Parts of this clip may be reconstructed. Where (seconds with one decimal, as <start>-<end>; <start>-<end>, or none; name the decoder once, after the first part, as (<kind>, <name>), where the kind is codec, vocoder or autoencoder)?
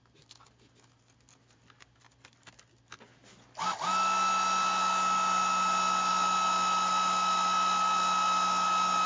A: none